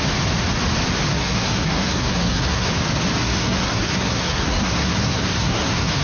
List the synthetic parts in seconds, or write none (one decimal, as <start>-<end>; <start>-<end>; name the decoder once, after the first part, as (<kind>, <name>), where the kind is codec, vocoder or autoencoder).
1.1-2.7 (codec, SNAC); 3.2-6.0